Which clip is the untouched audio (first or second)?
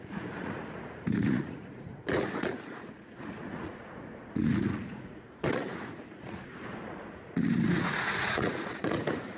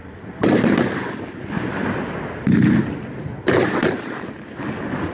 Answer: second